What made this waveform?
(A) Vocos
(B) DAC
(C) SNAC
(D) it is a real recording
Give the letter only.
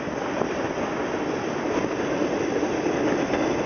D